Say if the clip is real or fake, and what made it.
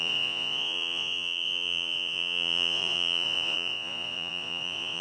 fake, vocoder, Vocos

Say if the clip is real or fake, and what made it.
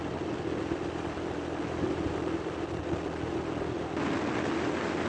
real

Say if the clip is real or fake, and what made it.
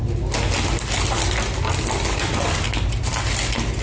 real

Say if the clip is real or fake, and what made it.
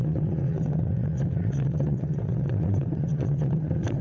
fake, vocoder, WaveNeXt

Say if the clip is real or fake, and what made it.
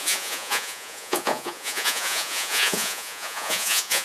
fake, vocoder, Vocos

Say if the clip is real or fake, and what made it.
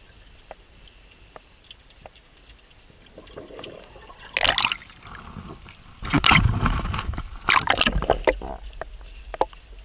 real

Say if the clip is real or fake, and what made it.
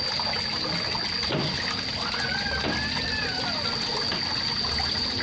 real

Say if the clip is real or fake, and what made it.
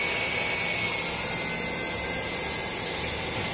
real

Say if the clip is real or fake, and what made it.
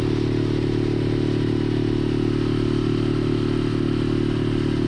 real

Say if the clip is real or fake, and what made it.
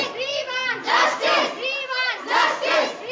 real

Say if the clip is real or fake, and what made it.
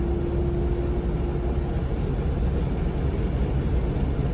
real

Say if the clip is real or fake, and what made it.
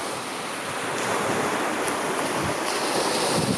real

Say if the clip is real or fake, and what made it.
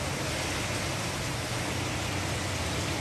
real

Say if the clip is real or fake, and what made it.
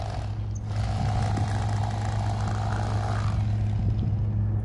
real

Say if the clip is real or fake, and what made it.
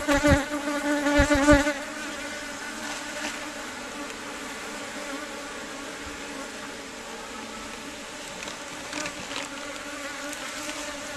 real